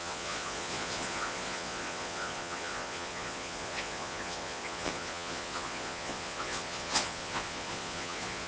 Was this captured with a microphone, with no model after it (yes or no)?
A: no